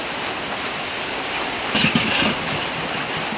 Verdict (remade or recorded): remade